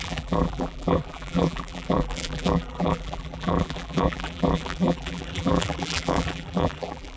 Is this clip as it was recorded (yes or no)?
no